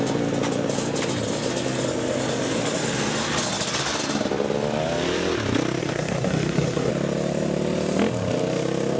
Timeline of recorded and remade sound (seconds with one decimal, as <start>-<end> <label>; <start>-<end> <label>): 0.0-5.8 recorded; 5.8-6.9 remade; 6.9-9.0 recorded